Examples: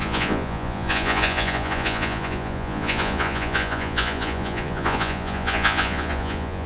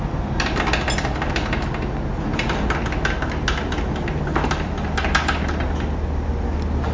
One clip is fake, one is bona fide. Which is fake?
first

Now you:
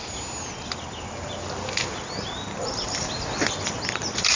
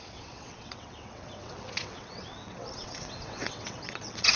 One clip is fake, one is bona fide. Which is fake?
second